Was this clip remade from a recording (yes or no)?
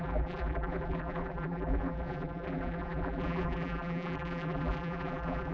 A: yes